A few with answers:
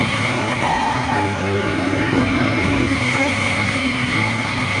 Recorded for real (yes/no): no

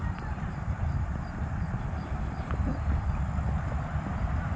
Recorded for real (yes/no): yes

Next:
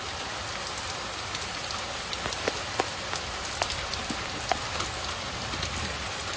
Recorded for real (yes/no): yes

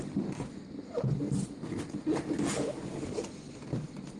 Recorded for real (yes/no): yes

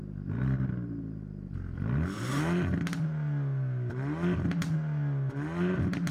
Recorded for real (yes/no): yes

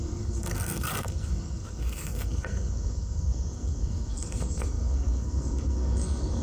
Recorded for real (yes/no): no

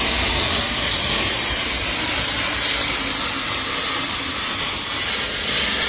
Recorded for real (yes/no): yes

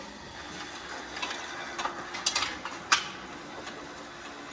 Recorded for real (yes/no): yes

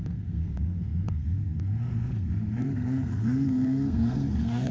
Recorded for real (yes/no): no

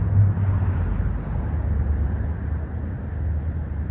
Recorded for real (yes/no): yes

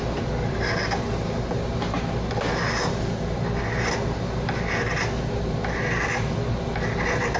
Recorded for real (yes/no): yes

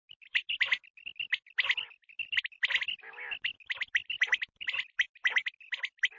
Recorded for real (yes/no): yes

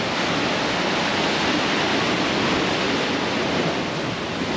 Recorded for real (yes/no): yes